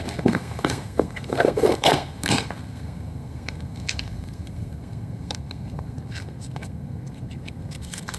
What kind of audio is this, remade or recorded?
remade